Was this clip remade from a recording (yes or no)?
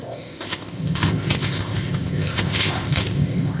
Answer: yes